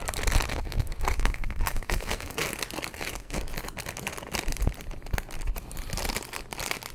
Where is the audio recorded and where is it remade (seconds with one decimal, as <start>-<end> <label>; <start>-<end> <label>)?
0.0-0.5 recorded; 0.5-2.5 remade; 2.5-2.9 recorded; 2.9-3.4 remade; 3.4-6.9 recorded